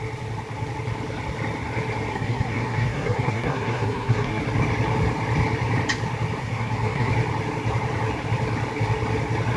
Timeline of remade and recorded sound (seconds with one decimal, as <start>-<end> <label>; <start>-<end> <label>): 0.0-2.1 recorded; 2.1-4.4 remade; 4.4-6.4 recorded; 6.4-7.1 remade; 7.1-9.6 recorded